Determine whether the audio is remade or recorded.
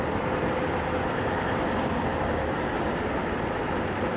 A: recorded